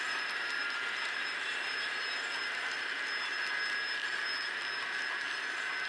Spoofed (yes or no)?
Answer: no